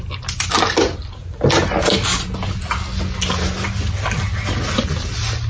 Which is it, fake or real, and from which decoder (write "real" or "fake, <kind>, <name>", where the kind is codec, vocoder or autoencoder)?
real